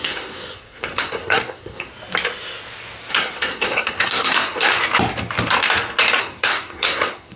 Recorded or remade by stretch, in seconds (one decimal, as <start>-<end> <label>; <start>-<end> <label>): 0.0-1.9 remade; 1.9-3.1 recorded; 3.1-4.7 remade; 4.7-6.2 recorded; 6.2-7.4 remade